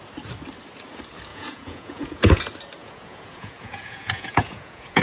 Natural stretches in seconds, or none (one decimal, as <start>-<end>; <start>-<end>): 0.0-1.3; 2.4-2.8